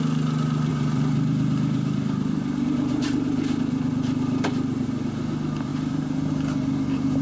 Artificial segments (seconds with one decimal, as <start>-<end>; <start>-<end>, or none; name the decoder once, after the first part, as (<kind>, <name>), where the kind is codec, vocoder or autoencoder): 0.7-3.6 (vocoder, BigVGAN v2); 5.7-6.3